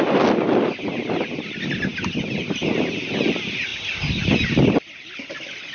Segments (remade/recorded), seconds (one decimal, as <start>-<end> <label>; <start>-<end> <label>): 0.0-5.7 recorded